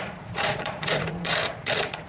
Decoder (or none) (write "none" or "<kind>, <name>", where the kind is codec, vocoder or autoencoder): vocoder, Vocos